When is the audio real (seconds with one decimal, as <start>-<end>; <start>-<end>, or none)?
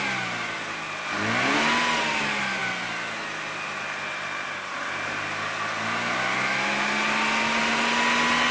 0.0-8.5